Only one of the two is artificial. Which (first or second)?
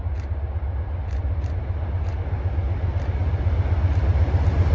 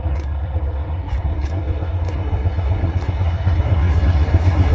second